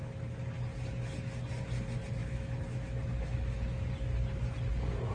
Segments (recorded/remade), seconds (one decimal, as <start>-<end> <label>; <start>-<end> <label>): 0.0-2.2 recorded; 2.2-3.9 remade; 3.9-5.1 recorded